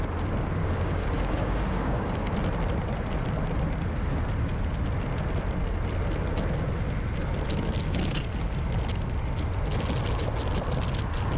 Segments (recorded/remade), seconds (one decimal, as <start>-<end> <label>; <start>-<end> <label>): 0.0-0.6 recorded; 0.6-2.3 remade; 2.3-11.4 recorded